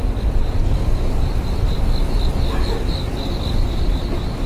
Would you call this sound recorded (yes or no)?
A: yes